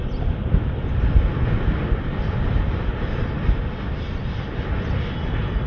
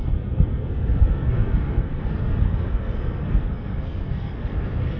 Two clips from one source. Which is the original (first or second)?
first